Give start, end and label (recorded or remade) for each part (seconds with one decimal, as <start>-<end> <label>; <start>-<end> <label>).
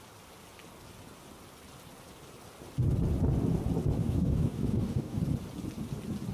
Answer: 0.0-4.0 recorded; 4.0-5.2 remade; 5.2-6.3 recorded